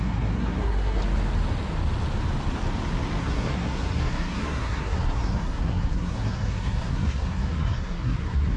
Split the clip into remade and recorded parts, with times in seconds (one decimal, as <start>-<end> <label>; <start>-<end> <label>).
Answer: 0.0-1.0 remade; 1.0-3.2 recorded; 3.2-8.6 remade

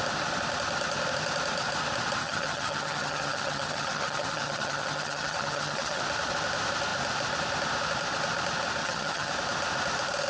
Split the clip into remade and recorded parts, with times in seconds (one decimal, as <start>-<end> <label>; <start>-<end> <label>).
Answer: 0.0-2.2 recorded; 2.2-6.0 remade; 6.0-8.8 recorded; 8.8-9.3 remade; 9.3-10.3 recorded

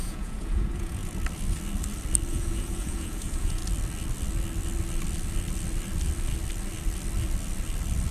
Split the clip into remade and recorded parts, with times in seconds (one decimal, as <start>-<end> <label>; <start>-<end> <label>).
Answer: 0.0-1.0 remade; 1.0-2.3 recorded; 2.3-3.6 remade; 3.6-8.1 recorded

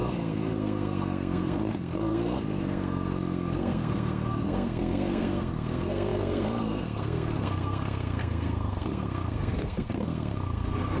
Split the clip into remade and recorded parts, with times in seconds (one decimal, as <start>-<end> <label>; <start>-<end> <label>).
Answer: 0.0-11.0 remade

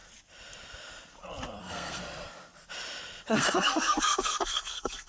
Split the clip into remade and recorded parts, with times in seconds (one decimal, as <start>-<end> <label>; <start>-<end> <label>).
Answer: 0.0-1.6 recorded; 1.6-2.0 remade; 2.0-3.3 recorded; 3.3-5.1 remade

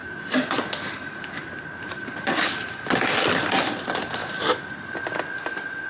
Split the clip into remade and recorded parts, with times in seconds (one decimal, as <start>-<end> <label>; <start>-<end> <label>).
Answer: 0.0-5.9 recorded

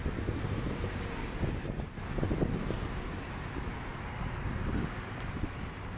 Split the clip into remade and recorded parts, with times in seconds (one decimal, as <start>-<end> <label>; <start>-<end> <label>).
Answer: 0.0-6.0 recorded

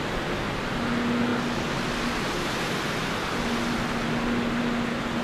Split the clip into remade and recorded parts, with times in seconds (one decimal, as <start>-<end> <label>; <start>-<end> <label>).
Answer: 0.0-5.2 recorded